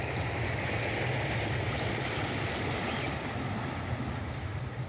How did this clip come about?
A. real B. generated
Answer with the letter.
A